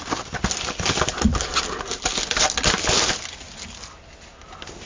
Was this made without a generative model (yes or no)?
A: yes